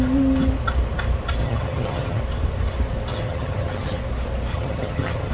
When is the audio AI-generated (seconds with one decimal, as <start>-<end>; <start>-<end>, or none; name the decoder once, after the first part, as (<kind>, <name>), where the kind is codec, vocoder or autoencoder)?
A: 1.4-2.2 (vocoder, HiFi-GAN); 3.1-4.0; 4.5-5.3